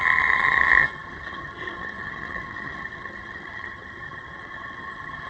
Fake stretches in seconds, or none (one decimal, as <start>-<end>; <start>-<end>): 0.0-5.3